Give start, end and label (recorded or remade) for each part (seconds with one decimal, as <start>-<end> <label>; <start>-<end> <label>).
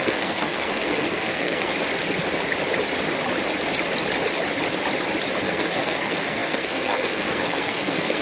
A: 0.0-1.7 remade; 1.7-5.4 recorded; 5.4-8.2 remade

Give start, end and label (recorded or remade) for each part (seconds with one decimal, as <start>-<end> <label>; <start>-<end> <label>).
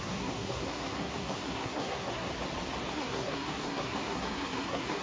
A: 0.0-2.3 remade; 2.3-2.9 recorded; 2.9-5.0 remade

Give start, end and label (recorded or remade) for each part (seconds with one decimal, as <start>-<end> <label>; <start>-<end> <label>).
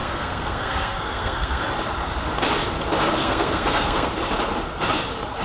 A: 0.0-1.6 remade; 1.6-3.2 recorded; 3.2-4.1 remade; 4.1-5.4 recorded